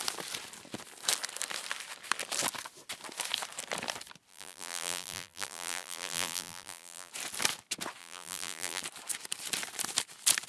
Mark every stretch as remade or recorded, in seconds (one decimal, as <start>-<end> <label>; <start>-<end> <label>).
0.0-4.3 recorded; 4.3-7.1 remade; 7.1-8.0 recorded; 8.0-8.8 remade; 8.8-10.5 recorded